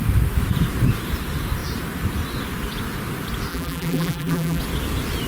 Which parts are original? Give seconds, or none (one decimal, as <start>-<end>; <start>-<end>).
0.0-3.5; 4.6-5.3